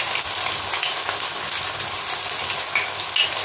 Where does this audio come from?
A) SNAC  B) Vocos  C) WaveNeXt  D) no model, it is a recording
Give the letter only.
D